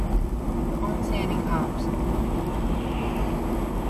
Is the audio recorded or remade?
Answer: recorded